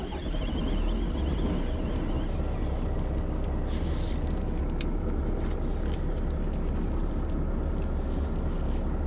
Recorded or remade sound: recorded